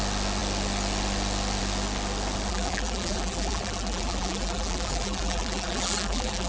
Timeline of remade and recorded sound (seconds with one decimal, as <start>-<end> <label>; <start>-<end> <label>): 0.0-2.5 recorded; 2.5-6.5 remade